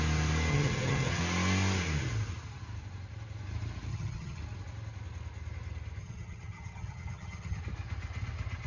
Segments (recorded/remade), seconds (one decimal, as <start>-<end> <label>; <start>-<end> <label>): 0.0-0.5 recorded; 0.5-1.2 remade; 1.2-3.9 recorded; 3.9-4.4 remade; 4.4-6.0 recorded; 6.0-7.6 remade; 7.6-8.7 recorded